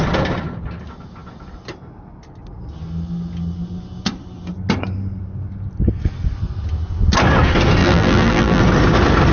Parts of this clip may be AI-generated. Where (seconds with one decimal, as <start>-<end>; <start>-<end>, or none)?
7.8-8.6